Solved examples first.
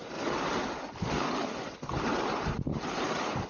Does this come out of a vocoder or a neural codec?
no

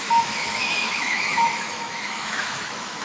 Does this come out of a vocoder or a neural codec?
yes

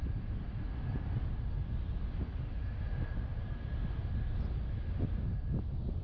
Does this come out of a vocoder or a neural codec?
no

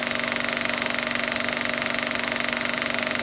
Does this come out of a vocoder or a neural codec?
no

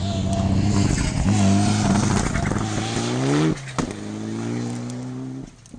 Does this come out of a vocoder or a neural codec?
no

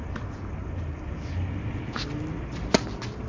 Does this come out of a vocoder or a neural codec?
no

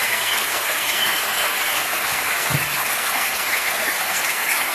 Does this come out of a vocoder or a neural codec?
yes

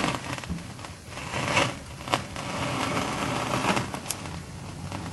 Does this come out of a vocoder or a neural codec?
no